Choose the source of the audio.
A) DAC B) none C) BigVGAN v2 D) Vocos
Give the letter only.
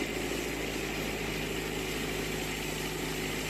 B